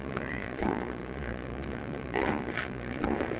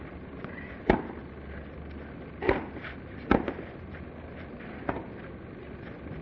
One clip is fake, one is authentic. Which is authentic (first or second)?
second